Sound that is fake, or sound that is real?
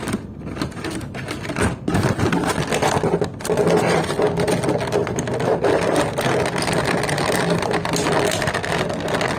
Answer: real